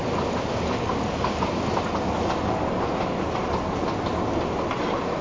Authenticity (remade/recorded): recorded